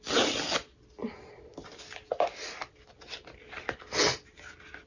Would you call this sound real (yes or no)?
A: yes